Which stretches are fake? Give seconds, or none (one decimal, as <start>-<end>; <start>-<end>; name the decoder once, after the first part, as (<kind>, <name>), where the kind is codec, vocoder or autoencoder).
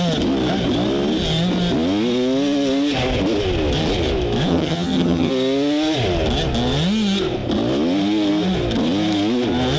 4.5-5.3 (vocoder, HiFi-GAN)